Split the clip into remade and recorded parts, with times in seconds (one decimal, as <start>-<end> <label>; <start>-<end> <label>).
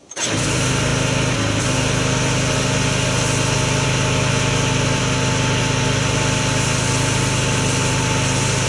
0.0-8.7 recorded